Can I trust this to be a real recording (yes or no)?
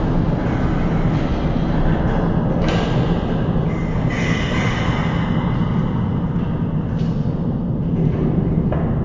yes